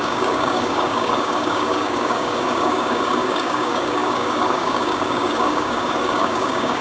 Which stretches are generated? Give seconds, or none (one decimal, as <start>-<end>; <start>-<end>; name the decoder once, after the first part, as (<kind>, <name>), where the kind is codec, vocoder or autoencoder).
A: 0.0-6.8 (codec, DAC)